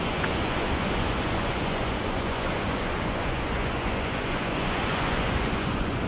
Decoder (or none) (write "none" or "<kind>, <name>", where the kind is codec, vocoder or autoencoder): vocoder, Vocos